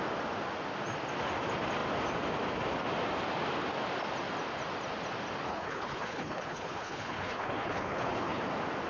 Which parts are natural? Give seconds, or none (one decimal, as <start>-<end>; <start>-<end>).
0.0-5.5; 8.4-8.9